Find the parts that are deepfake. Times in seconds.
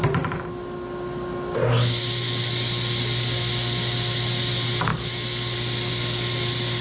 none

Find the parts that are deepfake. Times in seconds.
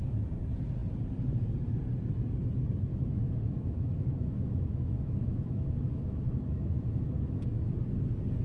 2.9-7.7 (autoencoder, DAC-VAE)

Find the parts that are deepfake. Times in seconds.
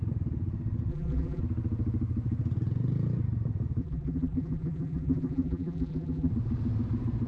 0.9-1.4 (vocoder, BigVGAN v2); 3.8-6.3